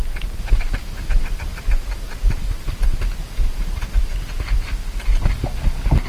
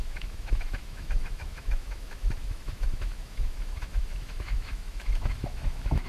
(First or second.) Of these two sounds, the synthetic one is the second